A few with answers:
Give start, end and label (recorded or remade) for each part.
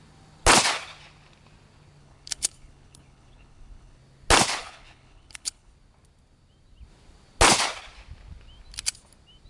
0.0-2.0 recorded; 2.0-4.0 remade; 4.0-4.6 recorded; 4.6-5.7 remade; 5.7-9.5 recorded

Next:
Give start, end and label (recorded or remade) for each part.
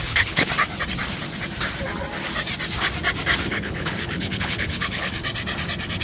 0.0-0.5 remade; 0.5-3.5 recorded; 3.5-5.1 remade; 5.1-6.0 recorded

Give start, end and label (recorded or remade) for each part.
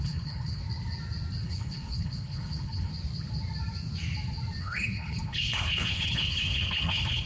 0.0-0.6 remade; 0.6-1.4 recorded; 1.4-2.9 remade; 2.9-4.6 recorded; 4.6-7.3 remade